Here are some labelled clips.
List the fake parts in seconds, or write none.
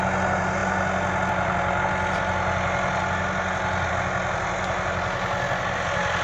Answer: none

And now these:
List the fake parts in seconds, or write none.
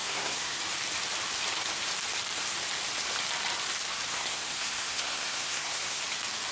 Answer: 0.0-0.6; 4.1-6.0